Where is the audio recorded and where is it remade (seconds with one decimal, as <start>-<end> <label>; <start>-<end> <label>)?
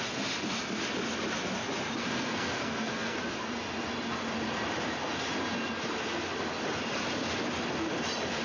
0.0-2.0 recorded; 2.0-3.2 remade; 3.2-8.4 recorded